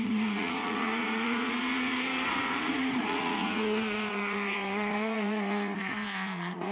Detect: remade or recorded remade